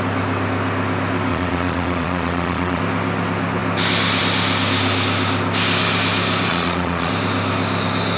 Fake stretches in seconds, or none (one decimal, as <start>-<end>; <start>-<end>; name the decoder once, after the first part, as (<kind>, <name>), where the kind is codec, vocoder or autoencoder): 1.3-2.8 (vocoder, Vocos); 6.5-7.1